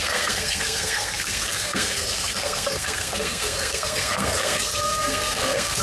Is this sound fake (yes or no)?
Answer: yes